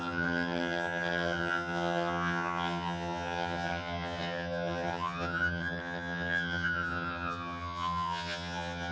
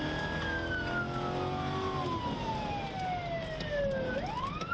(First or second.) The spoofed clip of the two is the first